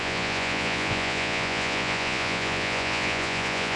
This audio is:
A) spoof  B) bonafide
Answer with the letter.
A